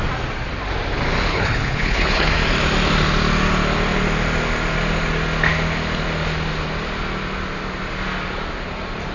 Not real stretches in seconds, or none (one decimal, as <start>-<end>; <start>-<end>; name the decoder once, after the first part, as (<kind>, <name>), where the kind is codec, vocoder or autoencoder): 1.3-2.3 (codec, HILCodec)

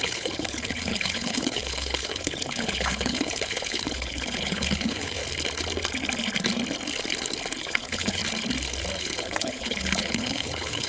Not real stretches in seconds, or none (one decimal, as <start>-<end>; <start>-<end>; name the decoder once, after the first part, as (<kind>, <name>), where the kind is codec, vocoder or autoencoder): 0.0-5.2 (codec, HILCodec); 7.6-8.2; 9.0-10.9

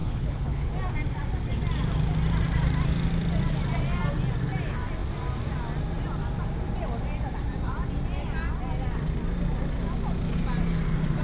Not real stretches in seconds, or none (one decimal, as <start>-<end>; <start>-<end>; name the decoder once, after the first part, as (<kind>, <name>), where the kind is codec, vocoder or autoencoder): 0.0-0.7 (codec, HILCodec)

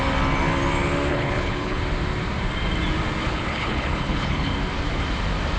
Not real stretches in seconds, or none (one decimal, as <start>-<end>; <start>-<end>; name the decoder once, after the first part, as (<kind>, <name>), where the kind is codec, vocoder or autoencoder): 1.1-1.8 (codec, HILCodec); 3.2-4.5

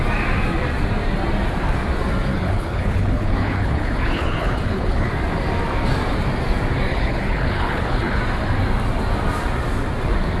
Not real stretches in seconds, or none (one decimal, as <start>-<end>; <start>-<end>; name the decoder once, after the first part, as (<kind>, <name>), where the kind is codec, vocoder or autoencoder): 2.3-5.1 (codec, HILCodec); 6.9-8.2

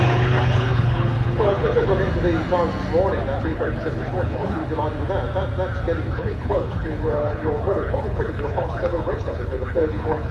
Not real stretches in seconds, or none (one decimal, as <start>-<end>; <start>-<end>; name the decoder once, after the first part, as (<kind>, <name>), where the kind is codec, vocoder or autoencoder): 0.0-1.9 (codec, HILCodec); 3.4-4.6; 6.1-10.3